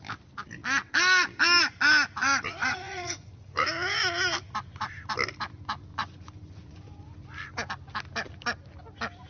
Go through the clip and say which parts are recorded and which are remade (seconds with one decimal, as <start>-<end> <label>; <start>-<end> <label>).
0.0-2.6 recorded; 2.6-3.3 remade; 3.3-5.9 recorded; 5.9-7.1 remade; 7.1-9.3 recorded